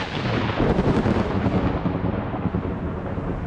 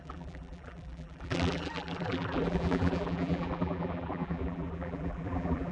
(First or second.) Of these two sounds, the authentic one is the first